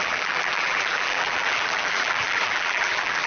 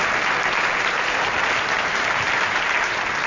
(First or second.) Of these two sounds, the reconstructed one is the first